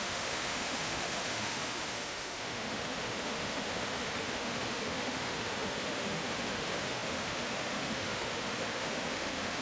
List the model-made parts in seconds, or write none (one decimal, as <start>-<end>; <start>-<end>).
0.0-9.6